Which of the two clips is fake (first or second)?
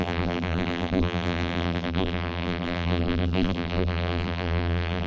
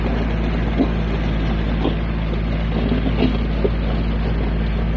first